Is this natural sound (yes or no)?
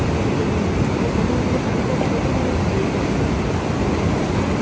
yes